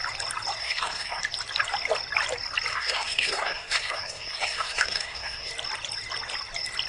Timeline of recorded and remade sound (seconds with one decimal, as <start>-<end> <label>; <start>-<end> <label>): 0.0-0.6 recorded; 0.6-1.2 remade; 1.2-2.7 recorded; 2.7-5.5 remade; 5.5-6.9 recorded

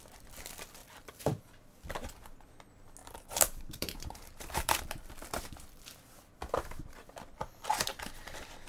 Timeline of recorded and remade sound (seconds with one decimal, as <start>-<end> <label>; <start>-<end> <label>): 0.0-0.8 recorded; 0.8-1.4 remade; 1.4-3.0 recorded; 3.0-4.8 remade; 4.8-8.7 recorded

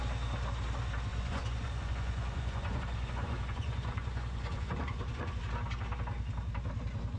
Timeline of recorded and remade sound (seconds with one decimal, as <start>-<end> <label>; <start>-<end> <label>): 0.0-1.1 recorded; 1.1-5.4 remade; 5.4-7.2 recorded

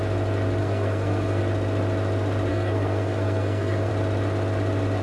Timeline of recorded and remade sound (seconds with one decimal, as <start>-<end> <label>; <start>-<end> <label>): 0.0-0.6 recorded; 0.6-1.4 remade; 1.4-2.5 recorded; 2.5-3.9 remade; 3.9-5.0 recorded